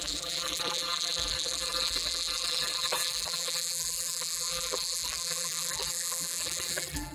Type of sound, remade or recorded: remade